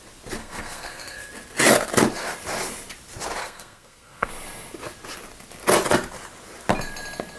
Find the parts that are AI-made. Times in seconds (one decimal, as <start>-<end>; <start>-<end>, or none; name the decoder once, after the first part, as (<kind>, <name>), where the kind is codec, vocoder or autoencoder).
0.4-1.3 (codec, SNAC); 3.4-4.3